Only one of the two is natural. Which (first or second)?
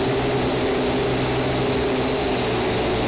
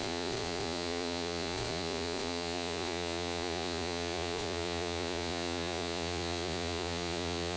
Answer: first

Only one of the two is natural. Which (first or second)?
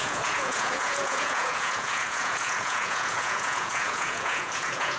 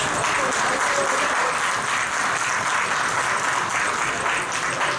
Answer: second